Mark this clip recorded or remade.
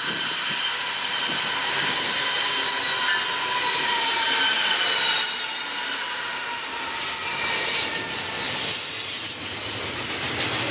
recorded